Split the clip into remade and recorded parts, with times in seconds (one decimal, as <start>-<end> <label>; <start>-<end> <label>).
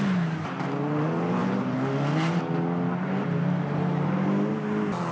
0.0-5.1 recorded